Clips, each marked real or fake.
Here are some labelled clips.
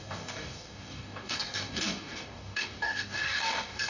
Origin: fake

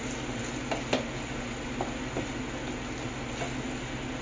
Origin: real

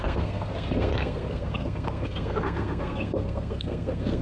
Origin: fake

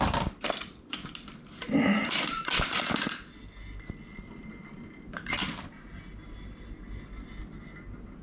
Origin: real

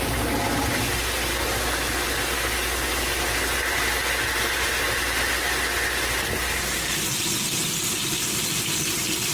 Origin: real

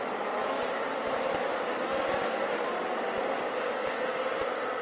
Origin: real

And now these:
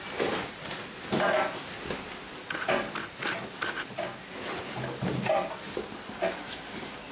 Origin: real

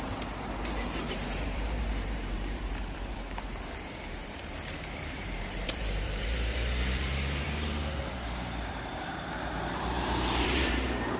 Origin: fake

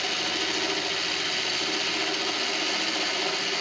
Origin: real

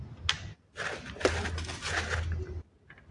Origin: real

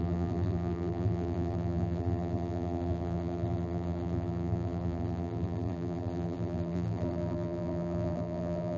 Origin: fake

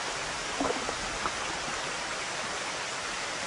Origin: real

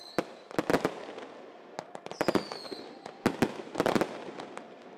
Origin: real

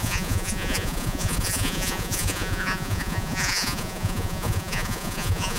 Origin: fake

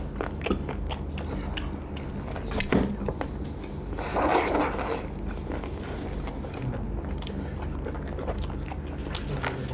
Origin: real